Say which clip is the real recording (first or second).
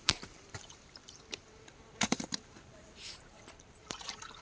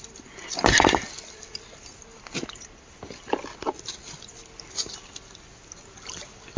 second